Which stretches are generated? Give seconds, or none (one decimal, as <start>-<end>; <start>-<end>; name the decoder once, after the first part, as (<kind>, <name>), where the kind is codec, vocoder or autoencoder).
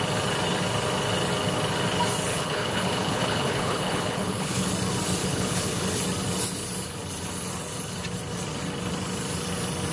2.3-4.7 (codec, HILCodec); 5.2-6.0